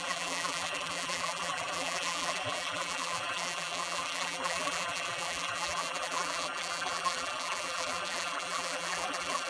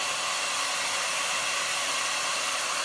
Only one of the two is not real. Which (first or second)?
first